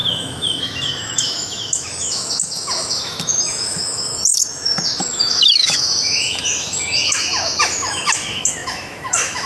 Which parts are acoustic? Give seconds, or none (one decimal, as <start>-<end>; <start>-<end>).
none